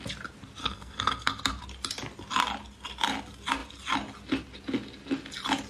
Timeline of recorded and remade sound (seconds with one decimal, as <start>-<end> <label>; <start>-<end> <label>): 0.0-0.6 recorded; 0.6-1.4 remade; 1.4-5.7 recorded